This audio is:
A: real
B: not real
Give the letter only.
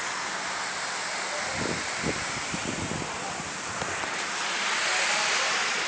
A